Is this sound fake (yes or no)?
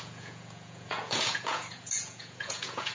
yes